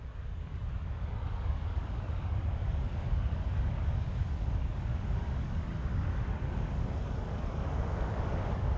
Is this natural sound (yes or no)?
no